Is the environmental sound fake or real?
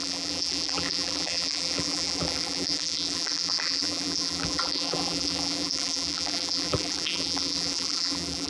fake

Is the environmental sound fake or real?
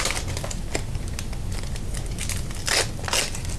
real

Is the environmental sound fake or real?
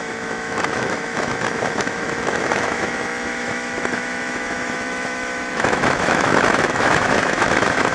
fake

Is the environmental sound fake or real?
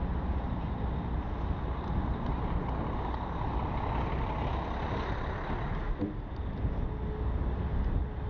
real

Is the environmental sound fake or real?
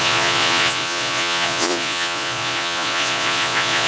fake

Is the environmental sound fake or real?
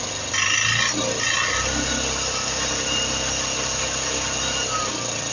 real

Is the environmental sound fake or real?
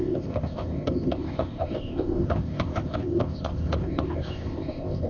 fake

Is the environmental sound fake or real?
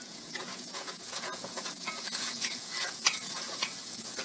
fake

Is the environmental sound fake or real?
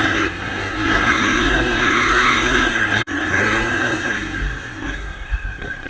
fake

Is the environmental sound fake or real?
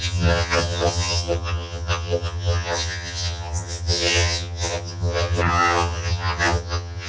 fake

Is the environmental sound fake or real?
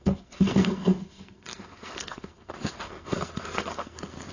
fake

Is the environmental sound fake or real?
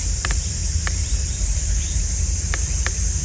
fake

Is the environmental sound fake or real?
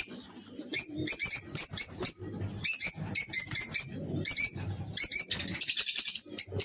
real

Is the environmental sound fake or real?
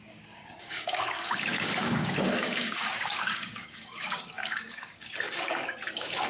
fake